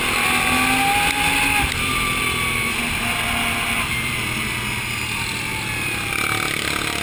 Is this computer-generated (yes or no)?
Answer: no